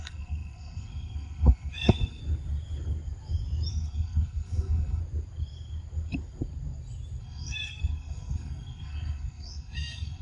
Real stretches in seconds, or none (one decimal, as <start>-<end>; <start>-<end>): 2.2-3.7; 5.0-7.2